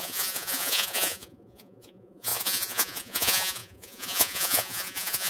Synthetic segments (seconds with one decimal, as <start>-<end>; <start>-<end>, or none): 0.0-5.3